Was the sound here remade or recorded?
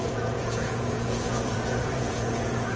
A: remade